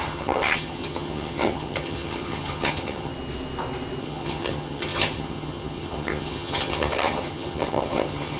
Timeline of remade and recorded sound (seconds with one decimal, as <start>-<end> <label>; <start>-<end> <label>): 0.0-3.1 remade; 3.1-4.0 recorded; 4.0-8.4 remade